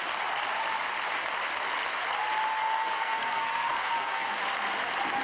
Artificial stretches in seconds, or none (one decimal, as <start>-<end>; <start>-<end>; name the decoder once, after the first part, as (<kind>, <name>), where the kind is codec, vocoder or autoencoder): 2.5-4.3 (codec, SNAC)